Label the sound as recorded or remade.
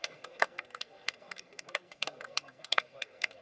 remade